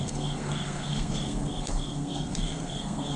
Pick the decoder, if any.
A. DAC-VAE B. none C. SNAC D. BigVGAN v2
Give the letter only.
C